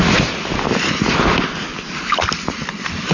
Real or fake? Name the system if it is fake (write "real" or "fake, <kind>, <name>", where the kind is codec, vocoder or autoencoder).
real